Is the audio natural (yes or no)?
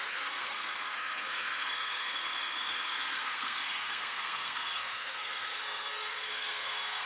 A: no